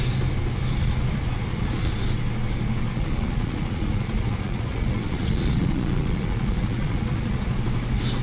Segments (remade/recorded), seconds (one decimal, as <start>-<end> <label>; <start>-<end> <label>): 0.0-0.8 recorded; 0.8-1.9 remade; 1.9-2.9 recorded; 2.9-7.6 remade; 7.6-8.2 recorded